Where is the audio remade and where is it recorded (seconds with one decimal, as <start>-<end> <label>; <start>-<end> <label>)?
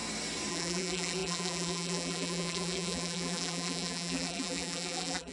0.0-0.5 recorded; 0.5-5.3 remade